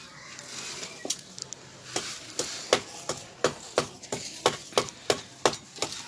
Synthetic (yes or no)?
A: no